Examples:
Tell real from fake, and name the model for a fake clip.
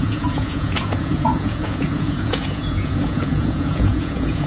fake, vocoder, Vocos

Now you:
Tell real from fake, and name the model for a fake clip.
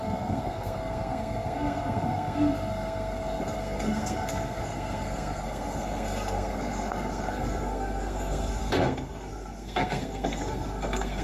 fake, codec, SNAC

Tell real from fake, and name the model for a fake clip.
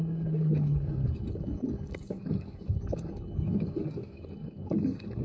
fake, codec, DAC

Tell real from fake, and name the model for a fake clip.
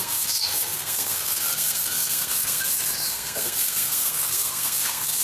fake, codec, SNAC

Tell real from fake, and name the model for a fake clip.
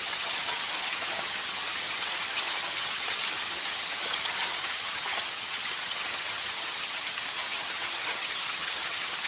fake, vocoder, HiFi-GAN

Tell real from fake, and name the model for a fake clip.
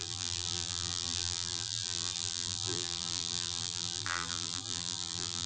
fake, vocoder, BigVGAN v2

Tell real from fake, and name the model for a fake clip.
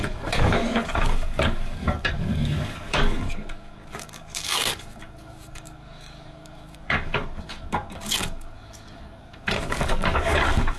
fake, codec, DAC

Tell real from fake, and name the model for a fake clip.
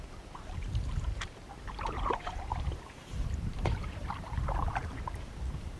fake, vocoder, BigVGAN v2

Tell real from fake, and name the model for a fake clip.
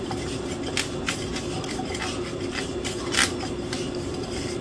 real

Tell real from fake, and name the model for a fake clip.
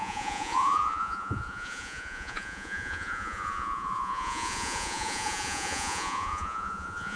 fake, vocoder, Vocos